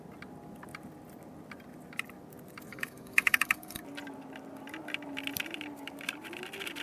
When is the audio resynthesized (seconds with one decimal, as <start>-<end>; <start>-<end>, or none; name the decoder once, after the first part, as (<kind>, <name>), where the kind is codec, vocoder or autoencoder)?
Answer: 2.7-3.8 (codec, DAC)

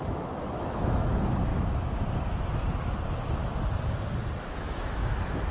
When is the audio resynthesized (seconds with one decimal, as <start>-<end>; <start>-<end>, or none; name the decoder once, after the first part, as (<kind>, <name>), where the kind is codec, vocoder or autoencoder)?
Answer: 0.0-1.5 (autoencoder, DAC-VAE); 4.4-5.5

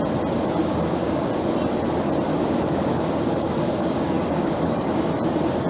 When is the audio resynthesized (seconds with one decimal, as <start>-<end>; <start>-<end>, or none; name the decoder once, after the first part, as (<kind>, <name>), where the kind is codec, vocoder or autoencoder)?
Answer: 0.6-1.3 (codec, DAC); 2.3-5.1

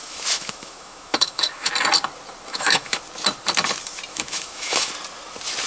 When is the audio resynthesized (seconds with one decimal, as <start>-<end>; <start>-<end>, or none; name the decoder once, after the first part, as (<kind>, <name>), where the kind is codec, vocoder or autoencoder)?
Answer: 0.0-1.7 (autoencoder, DAC-VAE); 2.5-3.0; 4.1-4.9